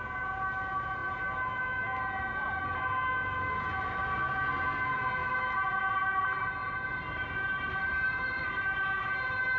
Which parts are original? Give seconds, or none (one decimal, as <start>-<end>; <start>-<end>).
0.0-6.6; 8.8-9.6